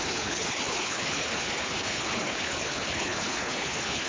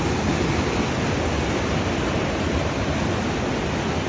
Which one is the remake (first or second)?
first